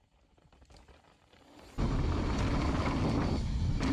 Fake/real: real